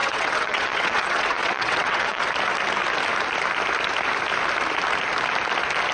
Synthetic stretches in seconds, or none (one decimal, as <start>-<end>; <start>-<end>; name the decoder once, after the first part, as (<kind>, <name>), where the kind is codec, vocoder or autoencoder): 0.0-2.2 (vocoder, WaveNeXt)

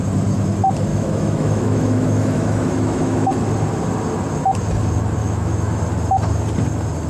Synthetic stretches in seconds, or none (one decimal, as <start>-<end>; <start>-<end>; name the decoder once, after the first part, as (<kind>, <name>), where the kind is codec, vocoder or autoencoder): 0.9-3.3 (autoencoder, DAC-VAE); 5.2-5.8

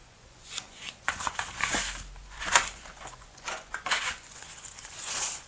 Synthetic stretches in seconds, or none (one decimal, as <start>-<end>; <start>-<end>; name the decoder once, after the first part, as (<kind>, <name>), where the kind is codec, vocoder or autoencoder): 0.0-1.8 (vocoder, Vocos); 2.2-5.5

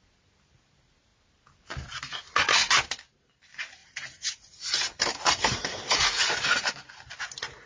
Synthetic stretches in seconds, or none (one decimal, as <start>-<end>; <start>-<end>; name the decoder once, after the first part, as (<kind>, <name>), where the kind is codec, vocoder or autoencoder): 3.8-7.1 (vocoder, BigVGAN v2)

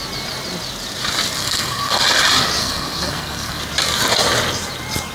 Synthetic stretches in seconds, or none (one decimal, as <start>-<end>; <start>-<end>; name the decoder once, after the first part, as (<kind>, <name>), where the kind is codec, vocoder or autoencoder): 1.4-2.0 (codec, SNAC); 2.6-3.6

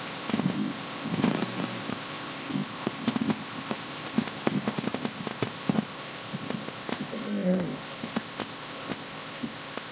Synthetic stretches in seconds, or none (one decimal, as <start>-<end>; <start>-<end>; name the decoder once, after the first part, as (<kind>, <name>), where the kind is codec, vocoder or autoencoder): 0.0-1.3 (codec, ZipCodec); 1.8-9.9